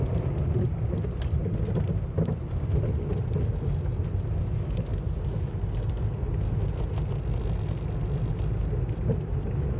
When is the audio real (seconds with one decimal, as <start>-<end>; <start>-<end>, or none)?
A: 0.0-9.8